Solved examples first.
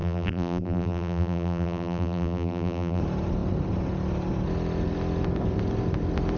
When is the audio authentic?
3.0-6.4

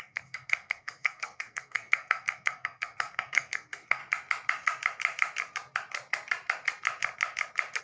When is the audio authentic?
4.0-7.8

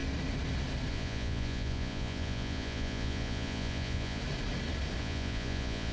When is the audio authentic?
0.0-0.9; 4.2-5.0

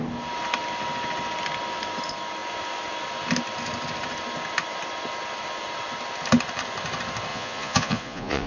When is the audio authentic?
0.0-7.3

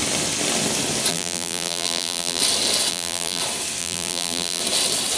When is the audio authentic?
0.0-1.1; 2.4-2.9; 3.4-3.8; 4.6-5.2

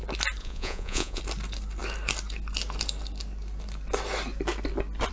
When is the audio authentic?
0.0-0.4; 1.2-5.1

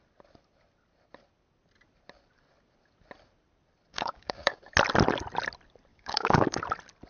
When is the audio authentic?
0.0-3.9; 4.6-5.9; 6.6-7.1